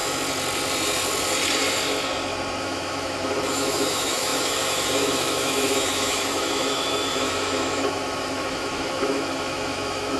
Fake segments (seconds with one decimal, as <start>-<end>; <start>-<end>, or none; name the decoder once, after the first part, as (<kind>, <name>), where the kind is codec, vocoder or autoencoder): 2.6-10.2 (autoencoder, DAC-VAE)